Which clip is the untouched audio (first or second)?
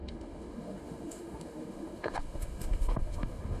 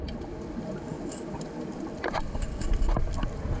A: second